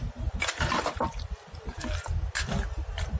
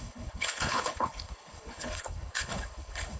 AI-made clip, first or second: second